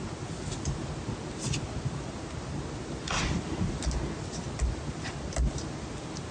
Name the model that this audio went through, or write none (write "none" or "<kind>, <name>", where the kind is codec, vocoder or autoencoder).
none